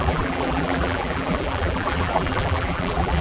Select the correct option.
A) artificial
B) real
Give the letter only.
A